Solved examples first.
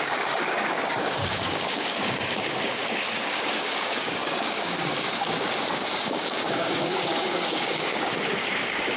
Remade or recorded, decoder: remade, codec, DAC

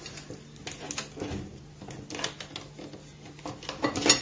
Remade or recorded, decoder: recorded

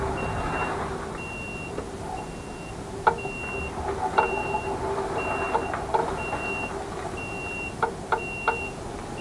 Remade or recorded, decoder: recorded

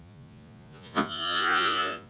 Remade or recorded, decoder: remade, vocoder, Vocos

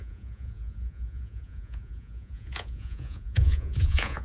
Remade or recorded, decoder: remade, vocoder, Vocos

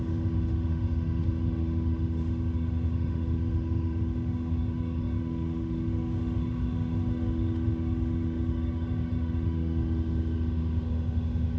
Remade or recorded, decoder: remade, autoencoder, DAC-VAE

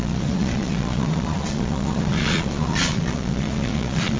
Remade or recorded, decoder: remade, vocoder, Vocos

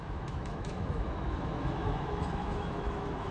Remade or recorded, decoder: remade, autoencoder, DAC-VAE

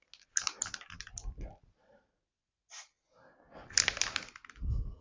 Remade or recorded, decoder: recorded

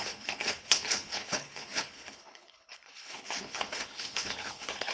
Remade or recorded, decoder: remade, codec, HILCodec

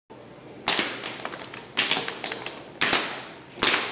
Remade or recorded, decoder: recorded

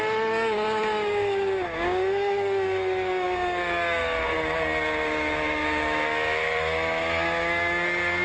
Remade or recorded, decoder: remade, codec, DAC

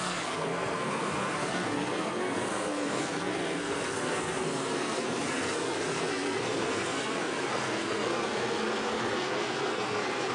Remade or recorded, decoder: remade, codec, SNAC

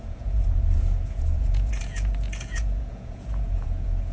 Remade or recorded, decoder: remade, vocoder, Vocos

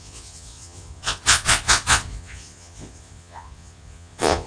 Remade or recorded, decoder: remade, vocoder, Vocos